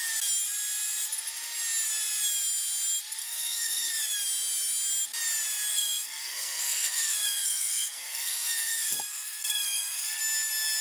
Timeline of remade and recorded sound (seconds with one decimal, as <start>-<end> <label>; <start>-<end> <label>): 0.0-3.2 recorded; 3.2-3.9 remade; 3.9-5.7 recorded; 5.7-10.2 remade; 10.2-10.8 recorded